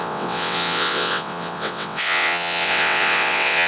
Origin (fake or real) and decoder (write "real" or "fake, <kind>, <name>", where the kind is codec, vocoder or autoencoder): fake, vocoder, WaveNeXt